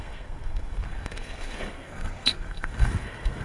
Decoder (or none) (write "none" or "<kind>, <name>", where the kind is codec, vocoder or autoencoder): codec, SNAC